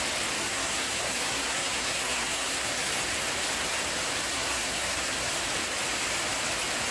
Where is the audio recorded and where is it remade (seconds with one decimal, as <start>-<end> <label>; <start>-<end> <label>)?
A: 0.0-0.4 recorded; 0.4-2.9 remade; 2.9-4.3 recorded; 4.3-5.3 remade; 5.3-6.9 recorded